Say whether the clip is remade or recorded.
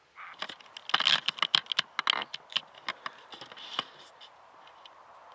recorded